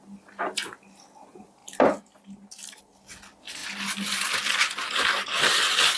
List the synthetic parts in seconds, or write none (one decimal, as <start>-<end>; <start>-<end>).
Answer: none